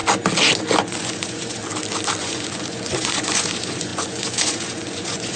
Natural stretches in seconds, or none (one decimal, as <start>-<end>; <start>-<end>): 0.0-0.8; 1.6-2.2